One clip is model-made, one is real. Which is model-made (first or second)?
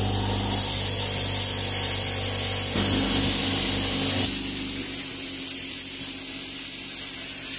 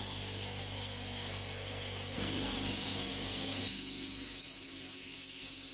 second